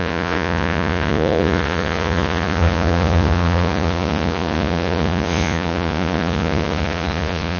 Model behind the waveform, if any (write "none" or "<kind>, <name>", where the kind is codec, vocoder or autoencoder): vocoder, Vocos